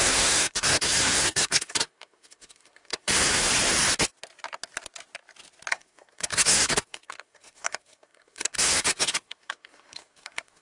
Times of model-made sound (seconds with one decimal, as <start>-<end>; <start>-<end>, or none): 0.0-3.5; 5.7-10.6